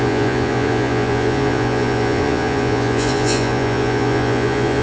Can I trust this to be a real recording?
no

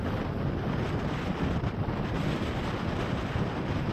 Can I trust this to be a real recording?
yes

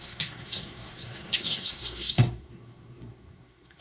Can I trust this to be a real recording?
no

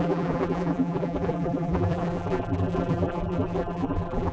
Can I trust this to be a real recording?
no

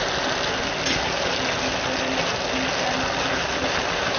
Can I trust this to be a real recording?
yes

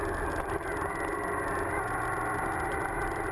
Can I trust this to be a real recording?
yes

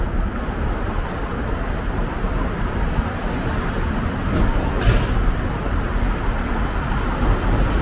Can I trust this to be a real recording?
yes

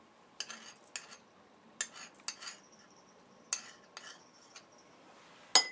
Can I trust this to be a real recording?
yes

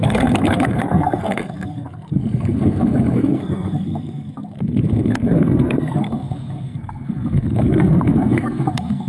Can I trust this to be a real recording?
no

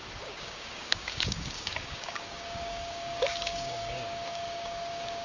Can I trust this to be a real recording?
no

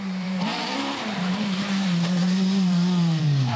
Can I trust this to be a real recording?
no